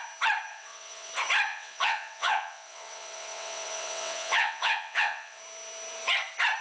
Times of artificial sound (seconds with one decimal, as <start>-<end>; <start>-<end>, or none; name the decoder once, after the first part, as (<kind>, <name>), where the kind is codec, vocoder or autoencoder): 0.5-1.1 (vocoder, WaveNeXt); 1.5-5.4